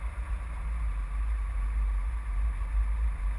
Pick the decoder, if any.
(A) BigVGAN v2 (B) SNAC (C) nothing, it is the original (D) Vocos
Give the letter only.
A